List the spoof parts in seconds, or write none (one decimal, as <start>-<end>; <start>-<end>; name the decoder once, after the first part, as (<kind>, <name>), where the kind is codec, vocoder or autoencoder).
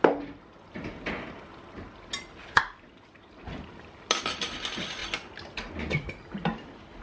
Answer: none